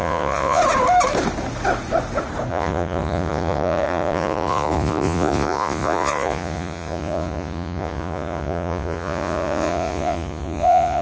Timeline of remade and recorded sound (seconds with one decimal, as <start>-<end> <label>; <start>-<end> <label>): 0.0-0.6 remade; 0.6-2.5 recorded; 2.5-11.0 remade